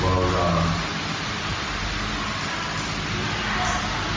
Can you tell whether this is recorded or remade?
recorded